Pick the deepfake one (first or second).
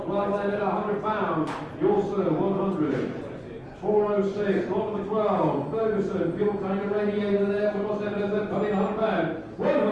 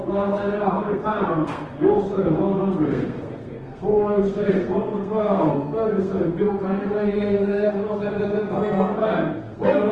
second